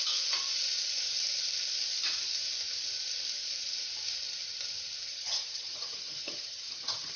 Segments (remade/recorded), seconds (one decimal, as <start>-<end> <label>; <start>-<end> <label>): 0.0-5.1 recorded; 5.1-7.2 remade